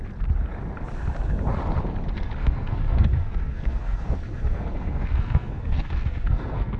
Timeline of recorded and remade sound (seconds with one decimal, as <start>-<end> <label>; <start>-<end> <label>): 0.0-2.4 recorded; 2.4-6.8 remade